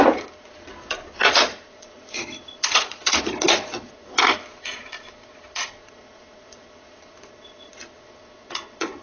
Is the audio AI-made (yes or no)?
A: yes